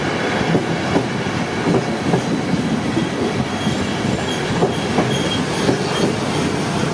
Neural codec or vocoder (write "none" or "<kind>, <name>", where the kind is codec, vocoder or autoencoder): none